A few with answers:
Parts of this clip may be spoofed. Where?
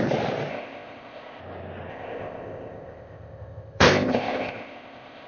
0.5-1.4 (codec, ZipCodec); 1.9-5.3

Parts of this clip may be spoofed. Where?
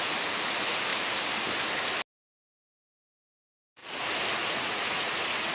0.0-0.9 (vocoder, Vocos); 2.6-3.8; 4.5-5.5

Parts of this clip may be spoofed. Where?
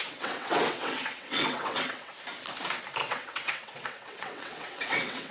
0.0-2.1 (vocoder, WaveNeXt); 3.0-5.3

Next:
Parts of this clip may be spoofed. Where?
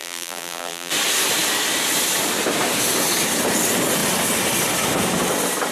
0.0-0.9 (vocoder, BigVGAN v2)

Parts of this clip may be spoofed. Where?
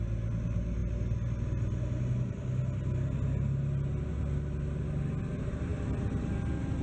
none